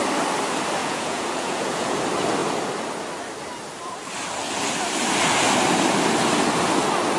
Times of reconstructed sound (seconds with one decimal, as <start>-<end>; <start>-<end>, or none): 0.8-2.0

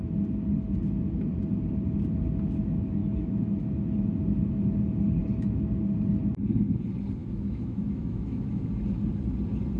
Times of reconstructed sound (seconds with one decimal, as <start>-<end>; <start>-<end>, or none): 3.0-3.6; 7.2-8.6

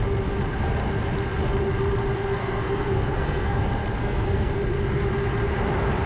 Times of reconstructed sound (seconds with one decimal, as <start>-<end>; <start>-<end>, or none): 2.4-3.6; 4.0-4.6

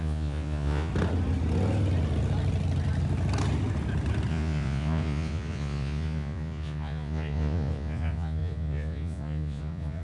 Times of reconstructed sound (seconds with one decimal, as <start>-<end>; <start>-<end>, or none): 0.0-0.9; 4.3-10.0

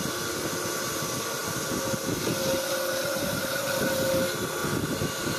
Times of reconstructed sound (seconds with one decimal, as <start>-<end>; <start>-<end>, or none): none

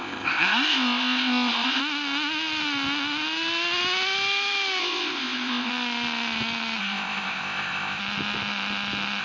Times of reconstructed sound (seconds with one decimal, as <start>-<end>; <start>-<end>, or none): 0.0-1.8; 4.8-5.7; 6.8-8.0

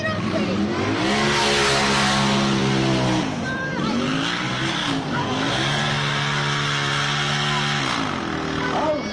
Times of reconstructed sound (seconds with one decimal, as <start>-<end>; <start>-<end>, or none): 4.8-5.8

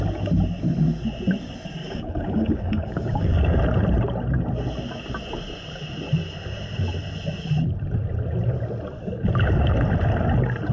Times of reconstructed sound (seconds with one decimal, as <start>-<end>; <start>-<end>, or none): 1.8-3.6